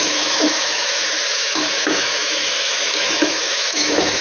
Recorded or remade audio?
remade